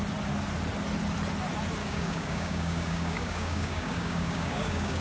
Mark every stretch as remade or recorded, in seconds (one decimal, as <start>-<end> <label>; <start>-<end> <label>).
0.0-1.8 recorded; 1.8-5.0 remade